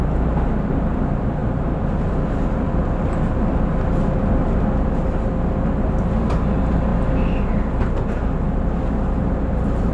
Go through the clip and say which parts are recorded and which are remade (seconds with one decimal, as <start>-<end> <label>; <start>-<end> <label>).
0.0-9.9 recorded